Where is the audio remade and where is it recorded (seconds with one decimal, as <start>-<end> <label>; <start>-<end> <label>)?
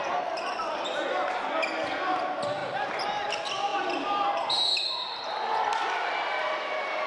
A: 0.0-7.1 recorded